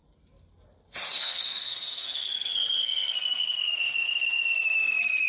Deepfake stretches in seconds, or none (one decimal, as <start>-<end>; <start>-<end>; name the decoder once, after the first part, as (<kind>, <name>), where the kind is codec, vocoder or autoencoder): 1.2-5.3 (codec, SNAC)